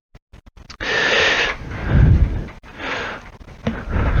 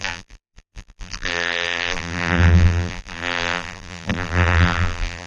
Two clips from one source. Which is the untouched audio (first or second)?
first